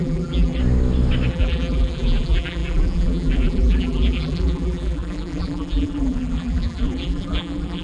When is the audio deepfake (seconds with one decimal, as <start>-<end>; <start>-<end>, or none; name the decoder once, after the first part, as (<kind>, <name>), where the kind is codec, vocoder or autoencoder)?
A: 0.0-0.6 (vocoder, BigVGAN v2); 1.3-7.8